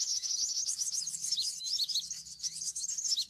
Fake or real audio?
fake